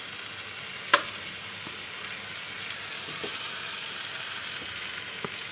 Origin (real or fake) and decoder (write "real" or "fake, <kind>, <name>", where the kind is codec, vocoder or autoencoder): real